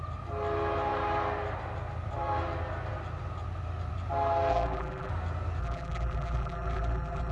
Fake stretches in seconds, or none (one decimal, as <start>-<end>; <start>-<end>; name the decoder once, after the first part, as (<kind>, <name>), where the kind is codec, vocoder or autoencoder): 4.5-5.1 (vocoder, BigVGAN v2); 5.6-7.3